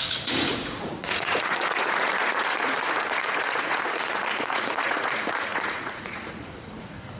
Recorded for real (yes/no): no